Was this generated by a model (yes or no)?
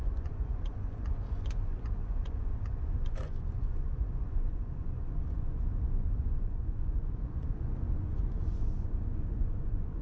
yes